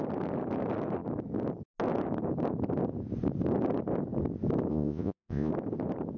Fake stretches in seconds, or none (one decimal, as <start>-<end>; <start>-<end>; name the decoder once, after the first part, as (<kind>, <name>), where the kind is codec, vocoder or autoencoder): 4.7-5.5 (vocoder, Vocos)